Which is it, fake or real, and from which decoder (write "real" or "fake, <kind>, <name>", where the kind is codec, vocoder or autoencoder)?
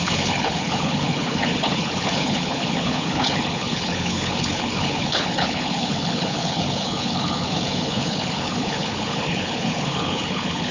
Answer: fake, codec, HILCodec